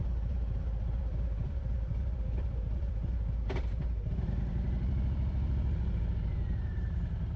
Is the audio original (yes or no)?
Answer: no